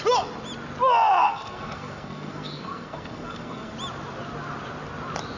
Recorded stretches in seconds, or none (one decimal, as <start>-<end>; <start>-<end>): 0.0-1.2; 3.7-5.4